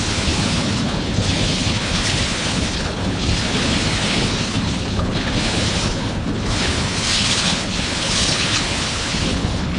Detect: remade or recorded remade